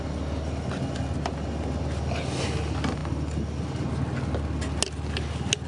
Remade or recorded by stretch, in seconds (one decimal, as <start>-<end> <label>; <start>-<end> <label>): 0.0-5.7 recorded